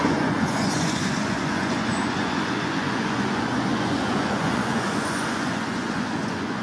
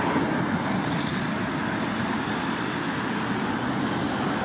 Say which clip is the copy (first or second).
first